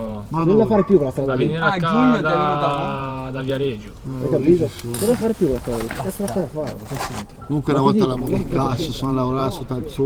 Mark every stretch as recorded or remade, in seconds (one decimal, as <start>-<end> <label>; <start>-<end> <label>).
0.0-0.4 remade; 0.4-1.1 recorded; 1.1-1.5 remade; 1.5-2.5 recorded; 2.5-6.4 remade; 6.4-6.9 recorded; 6.9-10.1 remade